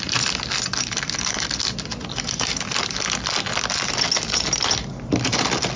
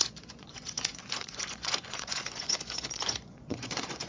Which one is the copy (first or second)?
second